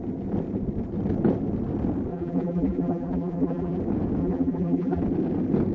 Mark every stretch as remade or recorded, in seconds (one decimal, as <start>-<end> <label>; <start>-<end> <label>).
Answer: 0.0-2.1 recorded; 2.1-3.8 remade; 3.8-4.2 recorded; 4.2-5.0 remade; 5.0-5.7 recorded